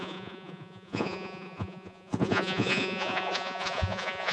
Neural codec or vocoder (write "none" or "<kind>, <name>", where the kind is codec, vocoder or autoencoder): vocoder, Vocos